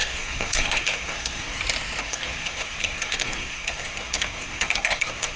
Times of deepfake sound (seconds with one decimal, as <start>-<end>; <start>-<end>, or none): 0.0-1.6; 2.0-5.4